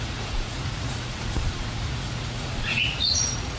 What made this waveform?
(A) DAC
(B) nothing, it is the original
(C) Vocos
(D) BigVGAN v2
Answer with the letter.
C